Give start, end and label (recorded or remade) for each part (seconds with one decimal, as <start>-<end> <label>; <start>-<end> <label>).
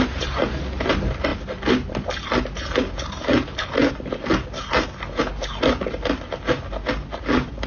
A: 0.0-7.7 recorded